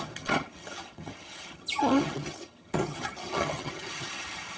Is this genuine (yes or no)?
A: no